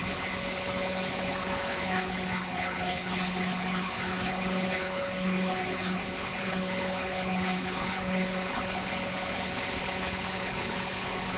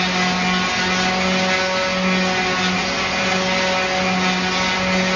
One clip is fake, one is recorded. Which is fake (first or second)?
first